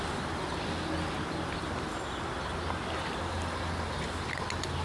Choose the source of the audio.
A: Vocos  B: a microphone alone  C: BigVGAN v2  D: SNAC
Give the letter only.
B